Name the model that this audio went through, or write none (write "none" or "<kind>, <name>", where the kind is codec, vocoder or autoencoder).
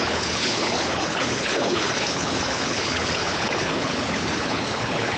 codec, HILCodec